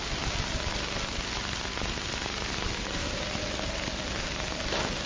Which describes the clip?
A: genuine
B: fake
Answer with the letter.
A